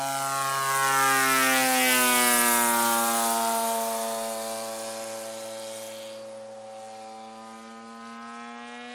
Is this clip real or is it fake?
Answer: real